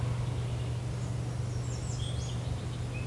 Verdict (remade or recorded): recorded